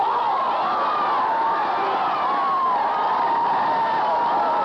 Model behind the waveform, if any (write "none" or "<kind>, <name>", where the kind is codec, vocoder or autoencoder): none